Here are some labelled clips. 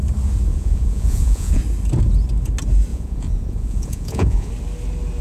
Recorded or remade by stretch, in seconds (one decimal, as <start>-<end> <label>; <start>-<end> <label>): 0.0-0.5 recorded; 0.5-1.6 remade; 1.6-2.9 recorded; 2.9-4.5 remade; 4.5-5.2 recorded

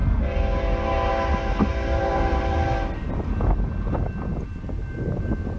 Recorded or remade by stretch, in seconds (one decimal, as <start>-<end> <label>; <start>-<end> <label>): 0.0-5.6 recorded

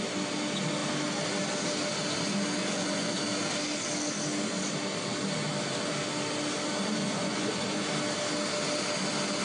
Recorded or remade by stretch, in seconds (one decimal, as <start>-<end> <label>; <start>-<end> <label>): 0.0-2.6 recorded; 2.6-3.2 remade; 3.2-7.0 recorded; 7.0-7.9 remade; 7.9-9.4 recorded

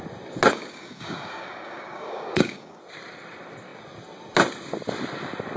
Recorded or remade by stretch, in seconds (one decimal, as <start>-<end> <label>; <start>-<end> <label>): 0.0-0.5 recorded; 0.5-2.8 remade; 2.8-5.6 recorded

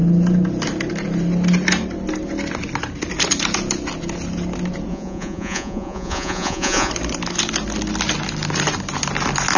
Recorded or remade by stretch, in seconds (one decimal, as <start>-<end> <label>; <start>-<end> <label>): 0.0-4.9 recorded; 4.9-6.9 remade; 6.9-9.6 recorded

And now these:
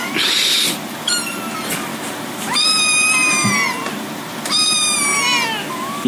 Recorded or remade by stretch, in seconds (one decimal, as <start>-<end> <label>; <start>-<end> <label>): 0.0-0.6 remade; 0.6-1.9 recorded; 1.9-4.7 remade; 4.7-6.1 recorded

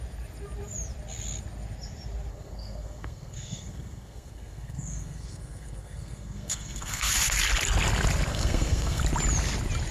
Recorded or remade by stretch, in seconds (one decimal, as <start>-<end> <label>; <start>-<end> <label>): 0.0-2.3 recorded; 2.3-7.1 remade; 7.1-8.3 recorded; 8.3-9.0 remade; 9.0-9.9 recorded